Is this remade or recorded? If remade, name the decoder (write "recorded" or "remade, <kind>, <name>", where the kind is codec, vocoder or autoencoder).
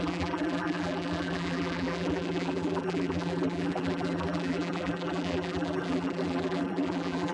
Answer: remade, vocoder, BigVGAN v2